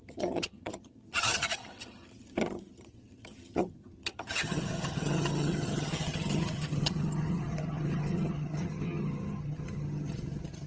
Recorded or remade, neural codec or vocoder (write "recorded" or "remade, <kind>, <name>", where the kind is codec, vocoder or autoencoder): remade, vocoder, HiFi-GAN